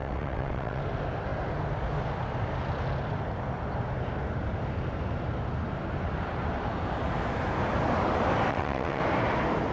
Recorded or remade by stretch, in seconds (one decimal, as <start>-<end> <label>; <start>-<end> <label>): 0.0-0.8 remade; 0.8-8.5 recorded; 8.5-9.0 remade; 9.0-9.7 recorded